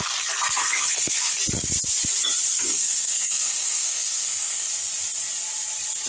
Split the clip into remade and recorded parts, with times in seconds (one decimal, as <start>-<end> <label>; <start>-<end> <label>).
0.0-0.6 recorded; 0.6-1.3 remade; 1.3-2.5 recorded; 2.5-4.7 remade; 4.7-6.1 recorded